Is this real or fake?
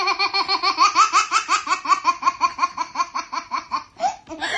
real